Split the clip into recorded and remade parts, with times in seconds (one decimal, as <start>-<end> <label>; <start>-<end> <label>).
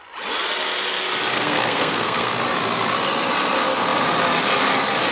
0.0-1.3 recorded; 1.3-2.3 remade; 2.3-5.1 recorded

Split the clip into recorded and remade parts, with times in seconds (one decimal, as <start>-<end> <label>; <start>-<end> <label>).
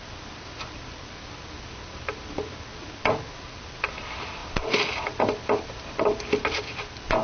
0.0-7.2 recorded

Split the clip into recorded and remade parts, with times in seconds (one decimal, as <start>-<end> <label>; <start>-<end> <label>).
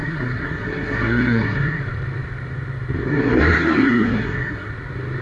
0.0-1.8 remade; 1.8-3.0 recorded; 3.0-4.7 remade; 4.7-5.2 recorded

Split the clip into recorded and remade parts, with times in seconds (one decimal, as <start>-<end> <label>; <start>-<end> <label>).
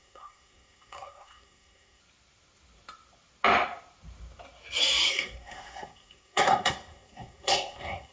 0.0-2.0 remade; 2.0-5.1 recorded; 5.1-8.1 remade